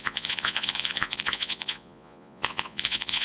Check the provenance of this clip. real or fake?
fake